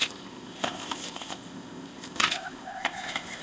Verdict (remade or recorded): remade